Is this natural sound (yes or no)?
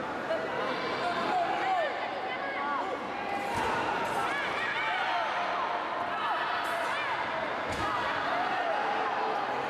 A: yes